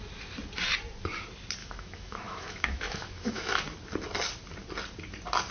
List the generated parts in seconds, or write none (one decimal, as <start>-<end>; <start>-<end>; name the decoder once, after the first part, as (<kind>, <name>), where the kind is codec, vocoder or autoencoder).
1.6-3.5 (autoencoder, DAC-VAE)